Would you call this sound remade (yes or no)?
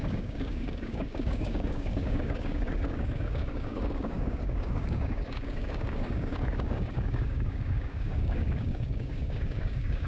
yes